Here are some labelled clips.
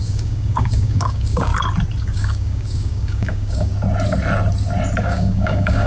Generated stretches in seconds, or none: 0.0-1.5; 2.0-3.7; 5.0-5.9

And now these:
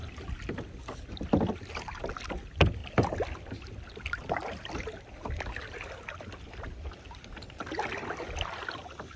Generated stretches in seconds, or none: none

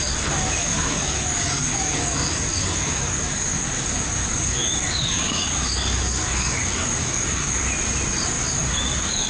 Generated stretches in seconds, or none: 0.0-7.6; 8.5-9.3

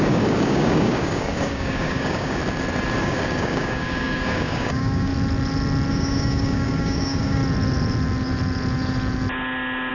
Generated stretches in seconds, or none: 0.0-2.4; 3.0-5.1; 5.9-7.4